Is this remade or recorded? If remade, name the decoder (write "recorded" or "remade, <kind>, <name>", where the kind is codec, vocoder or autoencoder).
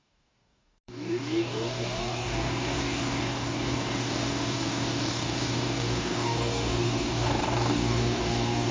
remade, codec, DAC